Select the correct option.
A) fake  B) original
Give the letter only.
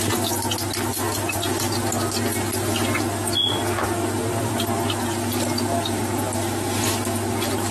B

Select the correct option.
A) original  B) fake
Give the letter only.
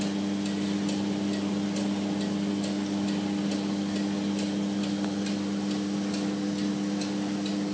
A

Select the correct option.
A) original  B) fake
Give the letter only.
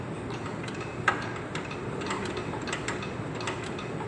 A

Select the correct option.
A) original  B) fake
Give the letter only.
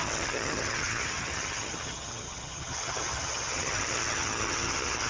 B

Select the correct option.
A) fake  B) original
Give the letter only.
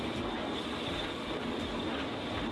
B